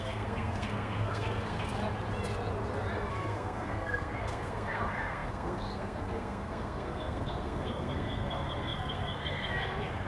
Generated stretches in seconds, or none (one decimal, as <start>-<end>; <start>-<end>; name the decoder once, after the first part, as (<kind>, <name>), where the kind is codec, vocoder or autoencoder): 0.0-1.8 (codec, SNAC); 3.1-10.1